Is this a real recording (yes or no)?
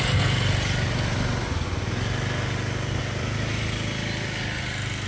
yes